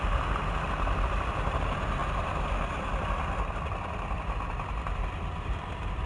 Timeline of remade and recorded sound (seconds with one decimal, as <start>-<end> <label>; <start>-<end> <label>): 0.0-6.1 recorded